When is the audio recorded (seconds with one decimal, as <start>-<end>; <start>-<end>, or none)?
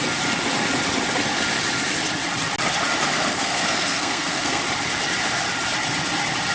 0.0-3.3; 4.6-6.5